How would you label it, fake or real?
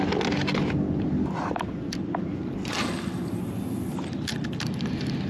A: real